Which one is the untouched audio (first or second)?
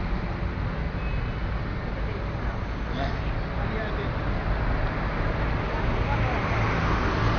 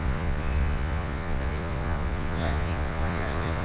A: first